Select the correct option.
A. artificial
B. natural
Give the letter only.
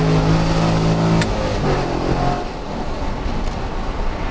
B